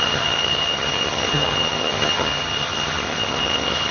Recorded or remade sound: remade